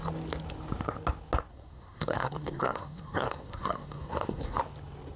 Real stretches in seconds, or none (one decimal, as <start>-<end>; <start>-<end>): 0.0-1.5; 4.6-5.2